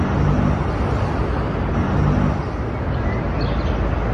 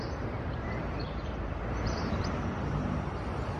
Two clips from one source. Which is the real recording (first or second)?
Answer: first